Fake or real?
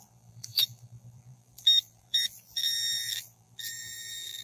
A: fake